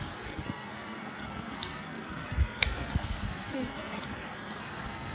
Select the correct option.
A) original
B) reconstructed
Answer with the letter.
B